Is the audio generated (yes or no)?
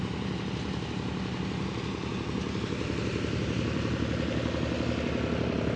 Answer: no